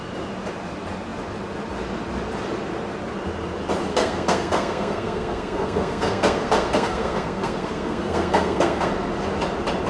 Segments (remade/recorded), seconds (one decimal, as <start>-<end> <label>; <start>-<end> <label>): 0.0-3.9 recorded; 3.9-8.9 remade; 8.9-9.9 recorded